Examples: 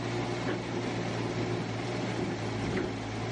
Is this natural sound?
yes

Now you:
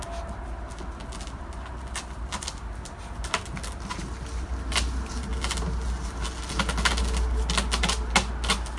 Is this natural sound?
yes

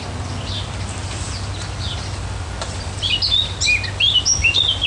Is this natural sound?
yes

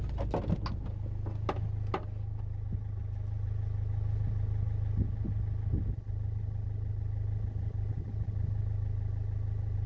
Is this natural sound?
yes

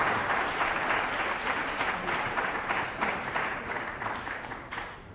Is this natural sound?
no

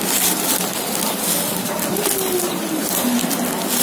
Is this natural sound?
yes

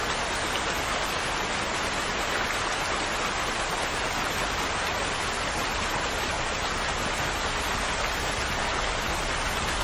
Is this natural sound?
yes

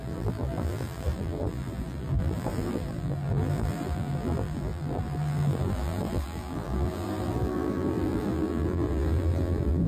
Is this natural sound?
no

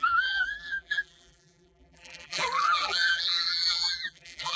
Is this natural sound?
no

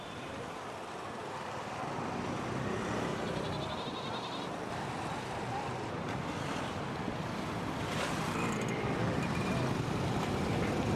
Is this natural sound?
no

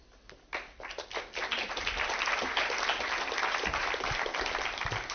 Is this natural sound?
yes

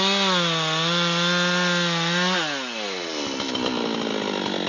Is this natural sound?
yes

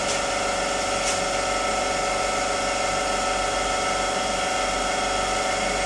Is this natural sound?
yes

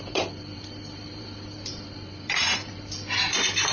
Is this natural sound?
no